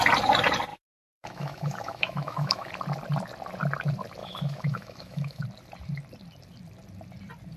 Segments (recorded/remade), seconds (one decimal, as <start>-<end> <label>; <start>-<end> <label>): 0.0-0.7 recorded; 0.7-2.7 remade; 2.7-4.2 recorded; 4.2-5.4 remade; 5.4-7.6 recorded